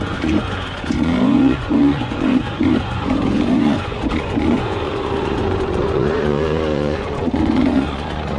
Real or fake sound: fake